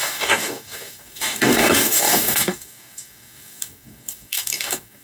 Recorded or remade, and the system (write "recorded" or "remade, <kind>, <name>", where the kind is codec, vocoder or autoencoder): remade, codec, DAC